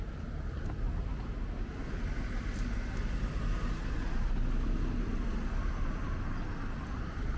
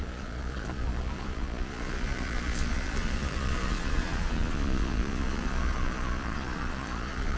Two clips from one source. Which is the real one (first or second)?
first